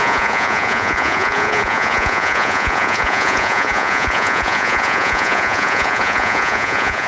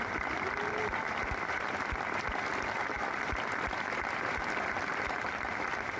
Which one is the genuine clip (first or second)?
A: second